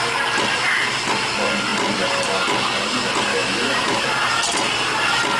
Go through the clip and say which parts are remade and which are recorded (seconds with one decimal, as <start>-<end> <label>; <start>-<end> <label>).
0.0-3.3 recorded; 3.3-4.0 remade; 4.0-5.4 recorded